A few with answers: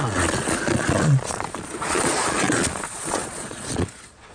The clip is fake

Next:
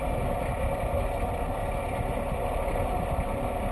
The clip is real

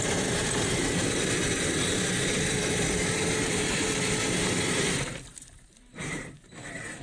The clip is fake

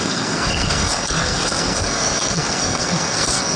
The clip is fake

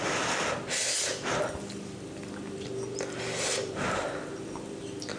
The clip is real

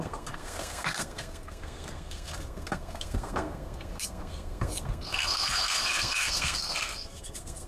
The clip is fake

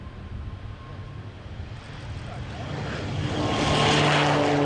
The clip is real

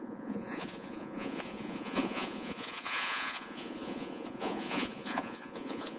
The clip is fake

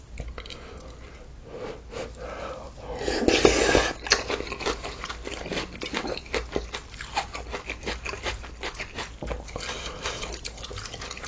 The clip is real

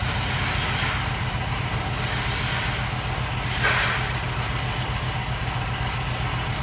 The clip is real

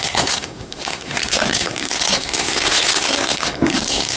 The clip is fake